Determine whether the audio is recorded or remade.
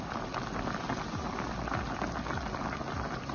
recorded